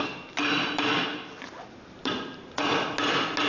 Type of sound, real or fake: real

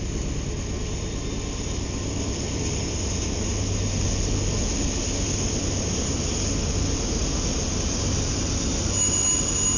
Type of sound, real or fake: real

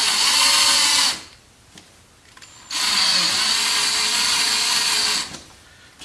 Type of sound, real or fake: real